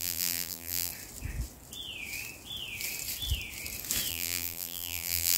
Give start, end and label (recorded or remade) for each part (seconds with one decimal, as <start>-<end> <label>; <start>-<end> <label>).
0.0-0.9 remade; 0.9-4.1 recorded; 4.1-5.4 remade